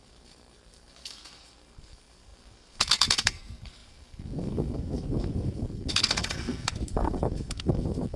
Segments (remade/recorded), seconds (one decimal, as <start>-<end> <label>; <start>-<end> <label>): 0.0-8.2 remade